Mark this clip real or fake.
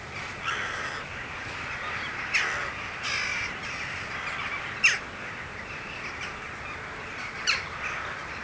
real